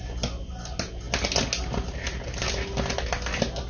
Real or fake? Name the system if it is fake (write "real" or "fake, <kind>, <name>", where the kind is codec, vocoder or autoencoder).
real